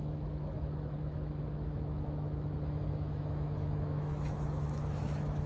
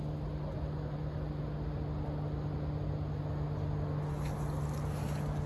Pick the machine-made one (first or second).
first